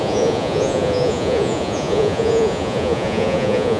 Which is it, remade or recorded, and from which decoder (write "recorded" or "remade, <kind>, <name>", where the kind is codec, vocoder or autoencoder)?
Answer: remade, vocoder, Vocos